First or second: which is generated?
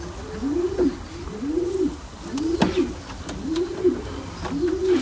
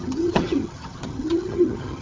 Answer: second